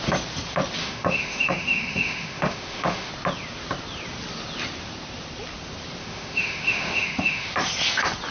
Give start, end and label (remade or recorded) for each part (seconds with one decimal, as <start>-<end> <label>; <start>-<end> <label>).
0.0-0.8 recorded; 0.8-3.1 remade; 3.1-6.0 recorded; 6.0-7.5 remade; 7.5-8.3 recorded